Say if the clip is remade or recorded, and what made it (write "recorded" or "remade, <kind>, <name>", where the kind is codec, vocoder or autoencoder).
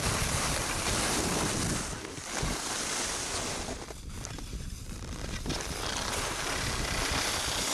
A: recorded